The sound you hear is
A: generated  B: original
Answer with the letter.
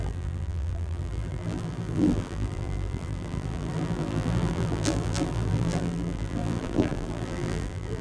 A